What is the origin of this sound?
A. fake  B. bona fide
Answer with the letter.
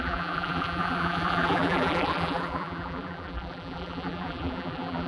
A